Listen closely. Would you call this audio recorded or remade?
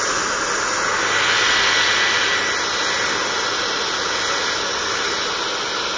recorded